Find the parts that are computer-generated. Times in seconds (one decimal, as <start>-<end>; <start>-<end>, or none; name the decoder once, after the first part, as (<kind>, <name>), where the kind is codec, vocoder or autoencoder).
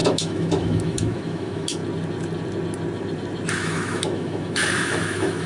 0.0-1.8 (autoencoder, DAC-VAE); 3.5-5.5